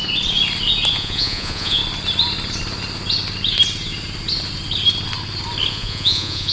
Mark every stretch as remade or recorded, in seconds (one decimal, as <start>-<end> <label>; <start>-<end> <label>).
0.0-0.9 recorded; 0.9-1.8 remade; 1.8-5.7 recorded; 5.7-6.5 remade